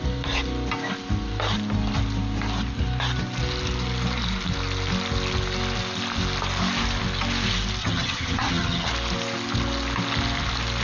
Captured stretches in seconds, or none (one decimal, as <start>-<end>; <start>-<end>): 0.0-7.8; 8.9-10.8